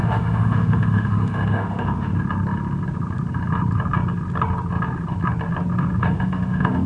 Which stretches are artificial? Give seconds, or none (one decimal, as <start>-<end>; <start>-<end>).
0.0-2.1; 6.0-6.9